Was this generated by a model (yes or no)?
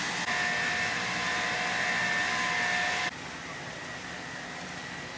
no